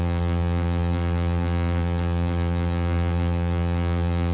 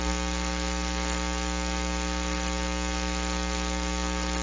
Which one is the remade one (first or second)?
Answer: first